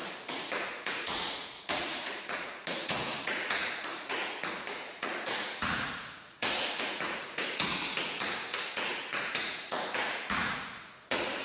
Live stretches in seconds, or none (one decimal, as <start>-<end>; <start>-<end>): none